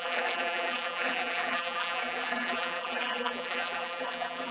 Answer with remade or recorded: remade